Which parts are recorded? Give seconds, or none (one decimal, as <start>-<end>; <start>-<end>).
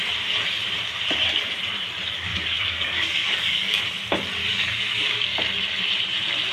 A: 0.0-2.3; 3.8-4.4; 5.3-6.5